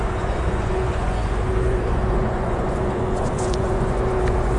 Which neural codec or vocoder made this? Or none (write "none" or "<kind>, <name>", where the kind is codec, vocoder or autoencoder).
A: vocoder, Vocos